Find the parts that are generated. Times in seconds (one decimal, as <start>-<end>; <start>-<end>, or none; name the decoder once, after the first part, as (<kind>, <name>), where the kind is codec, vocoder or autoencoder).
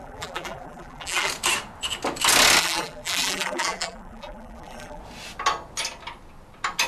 0.0-1.3 (vocoder, BigVGAN v2); 2.6-5.0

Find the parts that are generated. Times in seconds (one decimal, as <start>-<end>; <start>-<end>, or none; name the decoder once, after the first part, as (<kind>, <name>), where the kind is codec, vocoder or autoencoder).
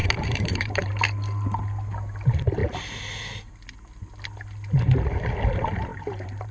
0.0-0.9 (vocoder, BigVGAN v2); 5.9-6.5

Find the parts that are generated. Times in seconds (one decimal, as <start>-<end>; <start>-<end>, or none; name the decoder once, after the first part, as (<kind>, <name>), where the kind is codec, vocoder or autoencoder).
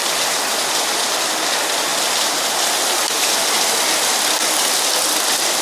0.0-1.9 (vocoder, BigVGAN v2)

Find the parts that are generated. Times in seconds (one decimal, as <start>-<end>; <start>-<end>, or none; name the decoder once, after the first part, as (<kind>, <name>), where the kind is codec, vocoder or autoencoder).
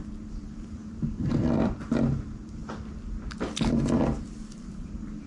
0.0-2.6 (vocoder, BigVGAN v2); 4.7-5.3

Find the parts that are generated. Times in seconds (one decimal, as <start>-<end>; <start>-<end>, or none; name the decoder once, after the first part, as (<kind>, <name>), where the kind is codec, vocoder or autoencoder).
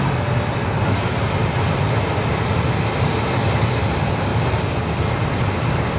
none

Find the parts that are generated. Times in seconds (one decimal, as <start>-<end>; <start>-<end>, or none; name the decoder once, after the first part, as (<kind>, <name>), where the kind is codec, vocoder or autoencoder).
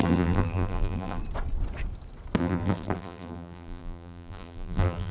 0.0-1.2 (vocoder, BigVGAN v2); 2.4-5.1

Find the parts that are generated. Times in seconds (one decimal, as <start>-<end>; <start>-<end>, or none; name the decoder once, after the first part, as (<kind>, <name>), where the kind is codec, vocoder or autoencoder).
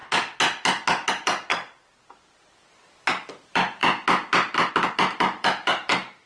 1.1-3.8 (vocoder, BigVGAN v2); 4.7-6.3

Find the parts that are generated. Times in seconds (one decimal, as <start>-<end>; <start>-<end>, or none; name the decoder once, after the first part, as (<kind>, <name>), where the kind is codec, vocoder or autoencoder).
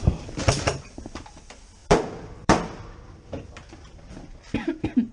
0.4-1.4 (vocoder, BigVGAN v2); 1.8-5.1